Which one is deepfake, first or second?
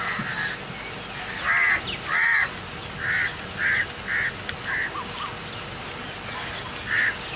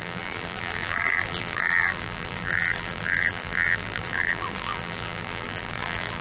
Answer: second